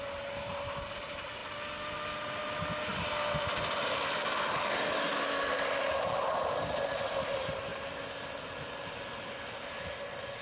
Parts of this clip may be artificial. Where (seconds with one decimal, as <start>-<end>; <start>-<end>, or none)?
none